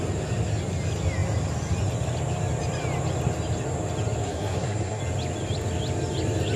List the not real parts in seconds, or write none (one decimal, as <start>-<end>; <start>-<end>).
4.2-5.0